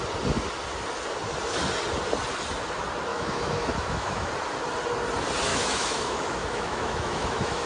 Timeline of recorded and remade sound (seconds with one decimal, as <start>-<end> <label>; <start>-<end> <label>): 0.0-3.1 recorded; 3.1-4.3 remade; 4.3-5.5 recorded; 5.5-7.7 remade